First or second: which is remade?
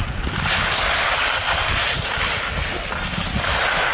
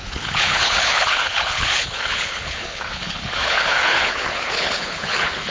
second